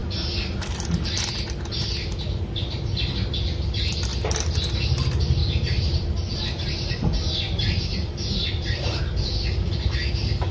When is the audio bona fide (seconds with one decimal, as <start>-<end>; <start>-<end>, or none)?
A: 0.0-5.4; 9.0-10.5